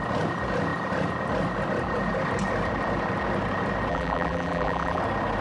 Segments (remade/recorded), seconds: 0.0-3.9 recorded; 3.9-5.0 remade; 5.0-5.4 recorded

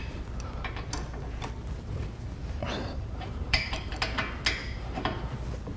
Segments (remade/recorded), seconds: 0.0-2.4 recorded; 2.4-3.9 remade; 3.9-4.6 recorded; 4.6-5.2 remade; 5.2-5.8 recorded

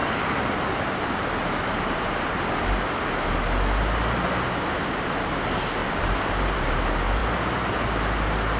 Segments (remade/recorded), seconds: 0.0-2.4 remade; 2.4-5.8 recorded; 5.8-6.8 remade; 6.8-8.6 recorded

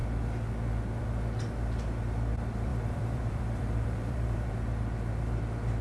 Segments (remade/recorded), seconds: 0.0-2.7 recorded; 2.7-4.5 remade; 4.5-5.8 recorded

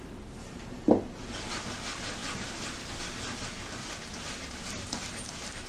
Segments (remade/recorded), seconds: 0.0-0.4 recorded; 0.4-1.7 remade; 1.7-3.8 recorded; 3.8-5.0 remade; 5.0-5.7 recorded

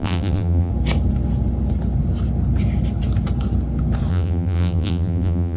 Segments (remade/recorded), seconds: 0.0-0.7 remade; 0.7-4.1 recorded; 4.1-5.6 remade

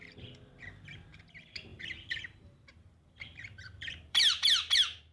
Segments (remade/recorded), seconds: 0.0-5.1 remade

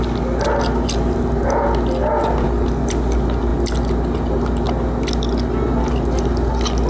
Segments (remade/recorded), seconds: 0.0-6.9 recorded